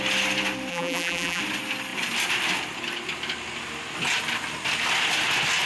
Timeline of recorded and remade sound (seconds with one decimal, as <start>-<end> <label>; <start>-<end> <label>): 0.0-0.7 recorded; 0.7-1.4 remade; 1.4-5.7 recorded